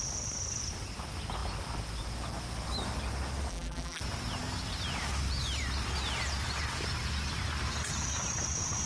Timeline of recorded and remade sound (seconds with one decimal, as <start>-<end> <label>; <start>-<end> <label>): 0.0-3.5 recorded; 3.5-4.0 remade; 4.0-8.9 recorded